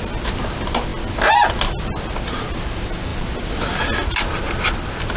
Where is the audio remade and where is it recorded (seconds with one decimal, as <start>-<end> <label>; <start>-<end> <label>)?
0.0-5.2 recorded